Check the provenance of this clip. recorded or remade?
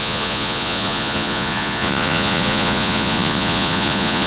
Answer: remade